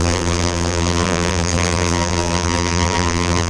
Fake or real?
fake